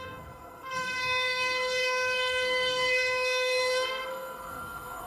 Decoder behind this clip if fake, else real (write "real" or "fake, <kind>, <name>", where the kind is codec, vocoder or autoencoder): fake, codec, SNAC